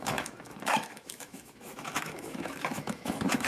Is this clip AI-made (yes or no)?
yes